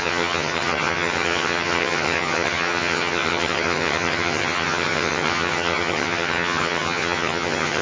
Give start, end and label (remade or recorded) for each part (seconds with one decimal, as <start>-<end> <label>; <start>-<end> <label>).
0.0-7.8 remade